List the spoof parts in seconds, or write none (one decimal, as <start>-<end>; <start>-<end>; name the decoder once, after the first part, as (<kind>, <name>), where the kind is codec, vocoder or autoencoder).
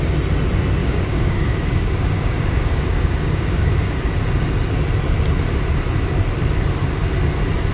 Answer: 0.8-4.1 (codec, DAC)